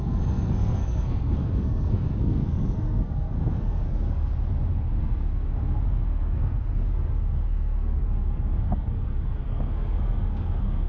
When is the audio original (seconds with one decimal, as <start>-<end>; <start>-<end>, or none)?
4.3-5.0